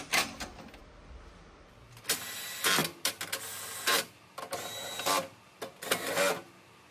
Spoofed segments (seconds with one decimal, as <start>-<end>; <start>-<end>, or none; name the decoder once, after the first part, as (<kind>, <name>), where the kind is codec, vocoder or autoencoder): none